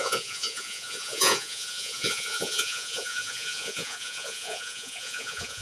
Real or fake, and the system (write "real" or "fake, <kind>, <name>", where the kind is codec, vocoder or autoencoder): fake, vocoder, Vocos